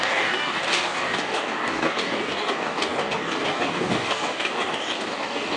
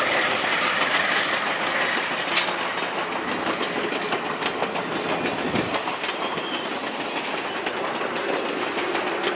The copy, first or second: first